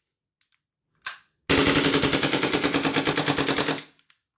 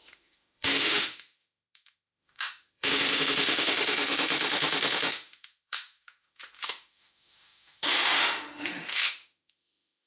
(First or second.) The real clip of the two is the first